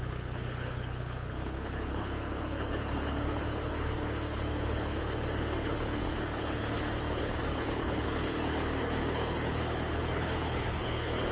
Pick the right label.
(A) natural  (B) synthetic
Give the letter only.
B